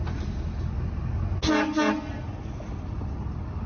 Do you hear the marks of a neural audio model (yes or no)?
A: no